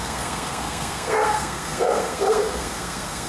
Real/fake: fake